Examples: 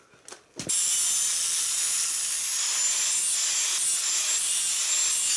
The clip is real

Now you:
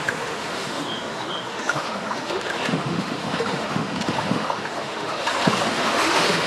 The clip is fake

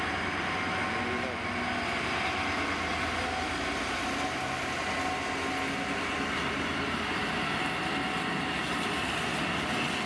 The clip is real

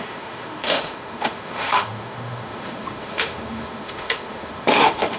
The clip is fake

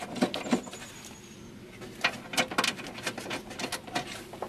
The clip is real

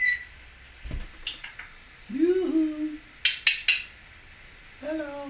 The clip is real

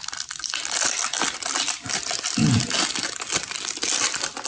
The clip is real